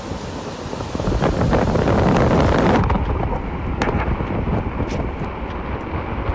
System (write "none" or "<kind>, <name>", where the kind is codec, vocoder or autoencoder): none